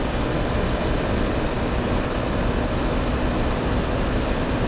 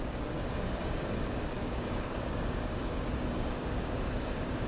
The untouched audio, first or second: first